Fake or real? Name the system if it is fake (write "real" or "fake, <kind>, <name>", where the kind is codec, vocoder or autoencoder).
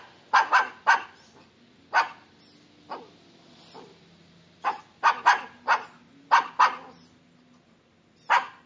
real